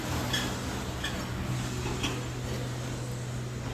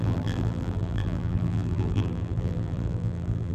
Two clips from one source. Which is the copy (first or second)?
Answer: second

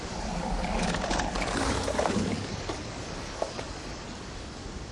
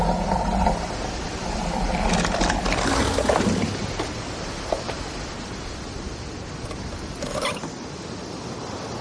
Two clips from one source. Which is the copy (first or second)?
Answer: first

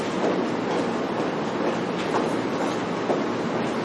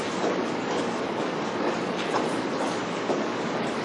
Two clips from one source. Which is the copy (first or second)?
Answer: second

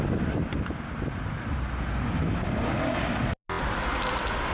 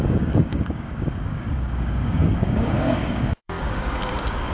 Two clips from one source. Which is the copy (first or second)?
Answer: second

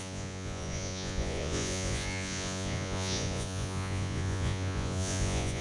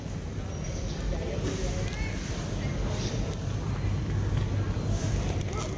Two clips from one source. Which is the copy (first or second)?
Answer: first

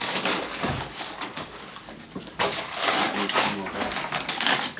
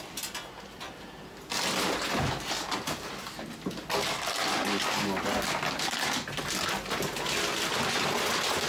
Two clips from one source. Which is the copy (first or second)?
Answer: first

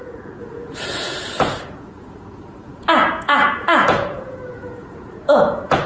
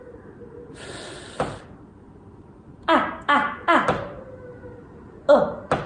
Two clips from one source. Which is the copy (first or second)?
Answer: first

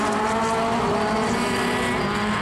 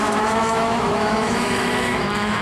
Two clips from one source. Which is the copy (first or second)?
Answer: second